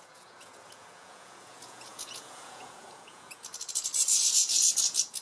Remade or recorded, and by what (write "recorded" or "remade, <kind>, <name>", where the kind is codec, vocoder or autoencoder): remade, vocoder, Vocos